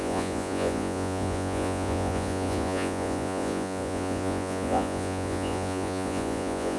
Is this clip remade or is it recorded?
remade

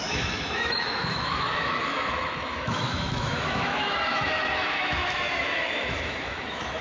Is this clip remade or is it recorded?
remade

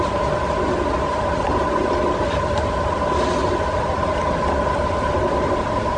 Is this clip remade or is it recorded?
recorded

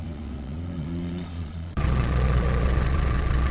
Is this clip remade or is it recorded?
remade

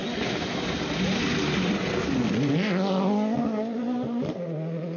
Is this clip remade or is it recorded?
recorded